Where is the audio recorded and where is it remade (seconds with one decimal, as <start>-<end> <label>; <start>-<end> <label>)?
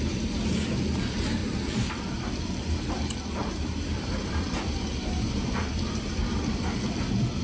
0.0-1.4 recorded; 1.4-2.0 remade; 2.0-3.4 recorded; 3.4-6.4 remade; 6.4-7.4 recorded